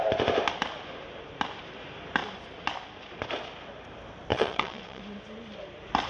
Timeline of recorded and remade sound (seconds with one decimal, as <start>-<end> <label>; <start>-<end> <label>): 0.0-4.3 recorded; 4.3-5.0 remade; 5.0-6.1 recorded